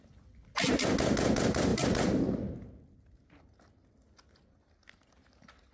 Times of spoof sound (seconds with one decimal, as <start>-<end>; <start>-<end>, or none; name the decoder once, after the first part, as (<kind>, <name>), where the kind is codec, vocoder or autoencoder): none